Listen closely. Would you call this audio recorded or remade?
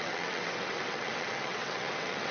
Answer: remade